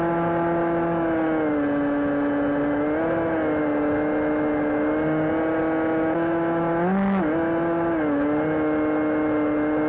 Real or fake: real